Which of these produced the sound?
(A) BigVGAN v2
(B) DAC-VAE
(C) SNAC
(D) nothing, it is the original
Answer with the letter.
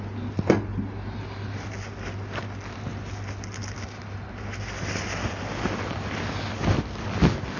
D